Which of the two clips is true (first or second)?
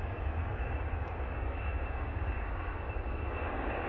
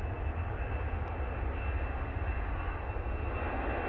second